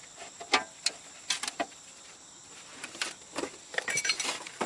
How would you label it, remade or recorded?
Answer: remade